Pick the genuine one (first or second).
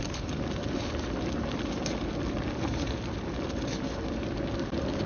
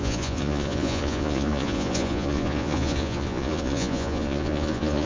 first